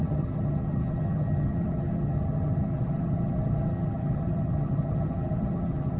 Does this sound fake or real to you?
fake